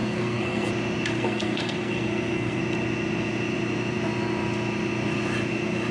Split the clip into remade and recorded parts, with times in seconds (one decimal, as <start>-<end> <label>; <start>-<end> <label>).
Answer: 0.0-0.7 remade; 0.7-1.1 recorded; 1.1-2.6 remade; 2.6-5.9 recorded

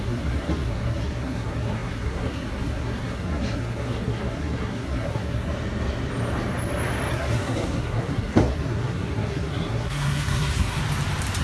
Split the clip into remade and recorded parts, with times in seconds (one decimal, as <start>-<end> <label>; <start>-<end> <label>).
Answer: 0.0-5.5 remade; 5.5-7.1 recorded; 7.1-10.8 remade; 10.8-11.4 recorded

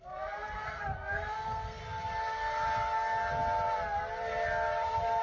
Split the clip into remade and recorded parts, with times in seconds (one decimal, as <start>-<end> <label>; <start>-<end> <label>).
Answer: 0.0-1.8 remade; 1.8-5.2 recorded

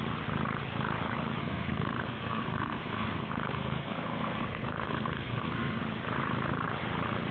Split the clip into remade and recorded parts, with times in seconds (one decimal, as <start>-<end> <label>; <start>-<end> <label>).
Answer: 0.0-1.4 recorded; 1.4-5.8 remade; 5.8-7.3 recorded

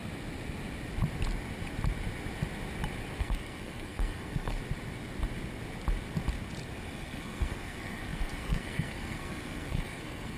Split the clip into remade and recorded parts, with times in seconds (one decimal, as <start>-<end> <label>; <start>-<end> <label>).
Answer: 0.0-3.2 recorded; 3.2-4.6 remade; 4.6-6.9 recorded; 6.9-10.4 remade